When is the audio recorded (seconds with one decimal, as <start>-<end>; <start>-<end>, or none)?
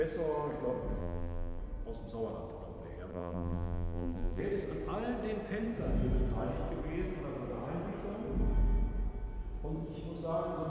0.0-1.0; 1.6-3.1; 4.4-10.7